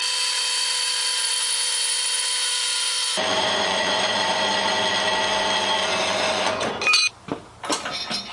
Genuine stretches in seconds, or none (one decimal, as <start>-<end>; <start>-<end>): 0.0-3.3; 4.4-5.9; 6.7-8.3